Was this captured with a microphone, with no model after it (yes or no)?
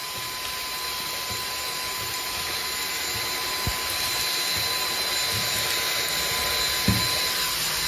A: yes